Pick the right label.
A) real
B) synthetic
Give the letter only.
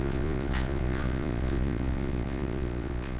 B